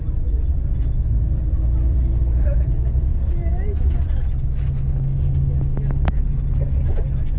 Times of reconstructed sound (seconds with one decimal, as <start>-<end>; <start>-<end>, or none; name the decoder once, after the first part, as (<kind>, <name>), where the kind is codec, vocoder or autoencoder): none